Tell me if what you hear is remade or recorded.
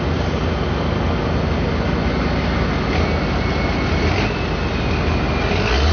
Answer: recorded